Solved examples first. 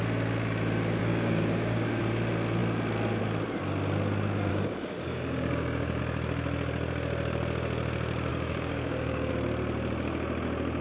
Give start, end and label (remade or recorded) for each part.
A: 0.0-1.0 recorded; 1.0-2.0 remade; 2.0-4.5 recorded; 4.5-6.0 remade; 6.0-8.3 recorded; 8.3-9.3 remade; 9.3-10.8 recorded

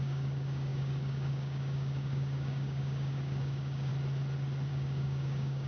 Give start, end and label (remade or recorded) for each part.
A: 0.0-3.9 remade; 3.9-4.7 recorded; 4.7-5.7 remade

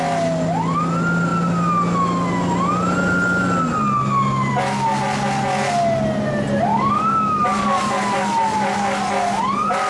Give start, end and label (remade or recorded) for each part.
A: 0.0-6.7 recorded; 6.7-9.0 remade; 9.0-9.9 recorded

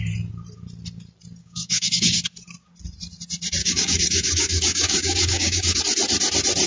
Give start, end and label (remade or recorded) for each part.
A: 0.0-1.4 recorded; 1.4-2.2 remade; 2.2-3.6 recorded; 3.6-5.8 remade; 5.8-6.7 recorded